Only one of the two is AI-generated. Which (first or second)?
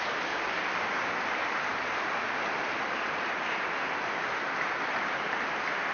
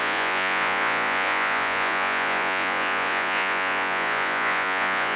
second